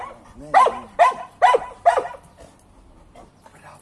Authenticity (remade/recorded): recorded